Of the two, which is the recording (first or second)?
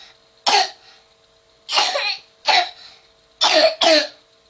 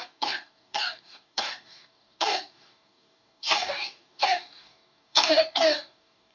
first